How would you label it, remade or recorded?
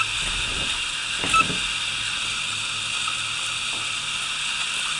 recorded